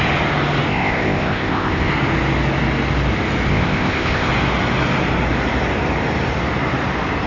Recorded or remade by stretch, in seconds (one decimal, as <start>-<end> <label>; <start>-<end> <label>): 0.0-0.7 recorded; 0.7-1.9 remade; 1.9-3.5 recorded; 3.5-4.3 remade; 4.3-7.3 recorded